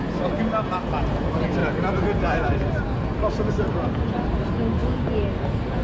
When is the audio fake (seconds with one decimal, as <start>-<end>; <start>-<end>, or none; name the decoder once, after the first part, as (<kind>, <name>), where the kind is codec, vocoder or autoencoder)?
none